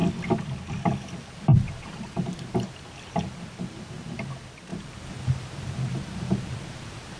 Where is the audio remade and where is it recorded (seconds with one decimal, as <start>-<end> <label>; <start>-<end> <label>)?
0.0-1.5 recorded; 1.5-2.7 remade; 2.7-4.7 recorded; 4.7-7.2 remade